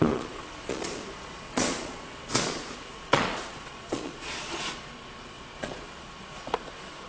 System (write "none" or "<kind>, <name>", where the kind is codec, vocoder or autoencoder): vocoder, Vocos